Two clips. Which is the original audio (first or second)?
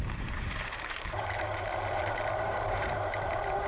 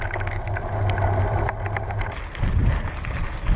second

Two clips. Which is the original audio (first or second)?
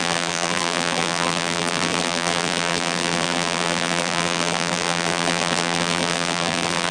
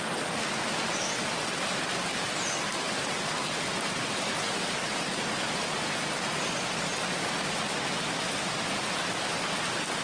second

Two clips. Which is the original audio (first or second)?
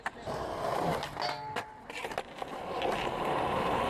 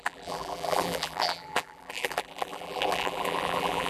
first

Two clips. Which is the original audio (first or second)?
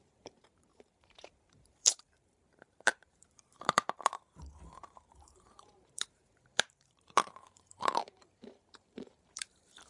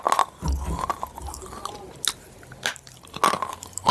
second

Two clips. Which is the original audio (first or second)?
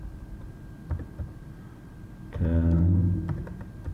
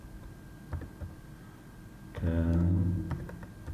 second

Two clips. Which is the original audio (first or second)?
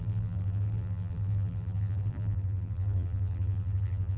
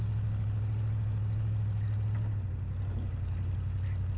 second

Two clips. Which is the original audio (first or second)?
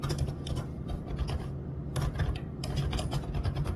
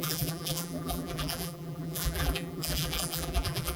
first